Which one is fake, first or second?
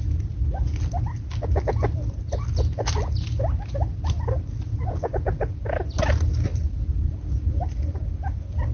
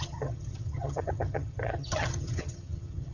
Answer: second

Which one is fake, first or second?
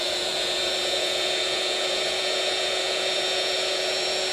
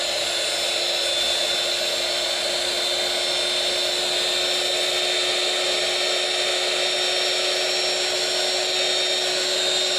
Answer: first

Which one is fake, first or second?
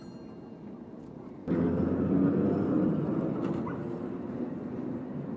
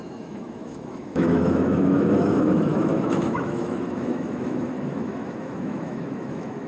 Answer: second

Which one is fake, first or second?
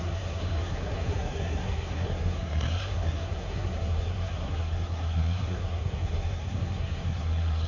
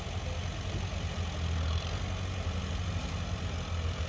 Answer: first